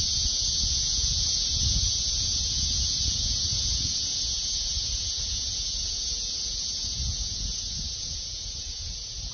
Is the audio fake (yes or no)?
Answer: yes